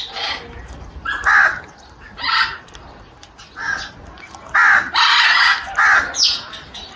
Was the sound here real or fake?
real